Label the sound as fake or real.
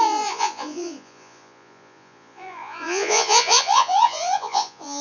fake